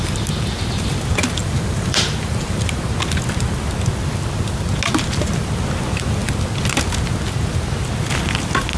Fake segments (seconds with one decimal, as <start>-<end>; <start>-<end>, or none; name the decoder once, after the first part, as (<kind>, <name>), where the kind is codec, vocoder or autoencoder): 1.4-2.9 (vocoder, BigVGAN v2)